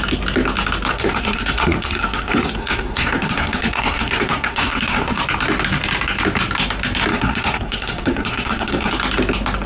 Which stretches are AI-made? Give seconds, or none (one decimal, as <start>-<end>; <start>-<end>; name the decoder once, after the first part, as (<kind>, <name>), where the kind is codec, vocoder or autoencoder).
0.9-5.2 (codec, SNAC); 7.1-8.9